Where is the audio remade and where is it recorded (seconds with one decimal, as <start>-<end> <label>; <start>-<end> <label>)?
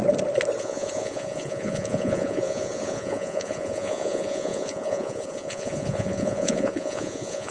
0.0-0.6 recorded; 0.6-7.5 remade